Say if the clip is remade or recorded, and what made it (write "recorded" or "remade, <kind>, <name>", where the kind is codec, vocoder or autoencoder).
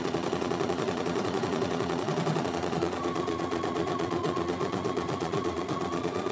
remade, vocoder, Vocos